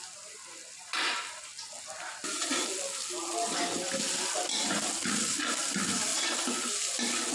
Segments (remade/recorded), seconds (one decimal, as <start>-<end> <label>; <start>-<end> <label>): 0.0-0.6 recorded; 0.6-1.3 remade; 1.3-7.3 recorded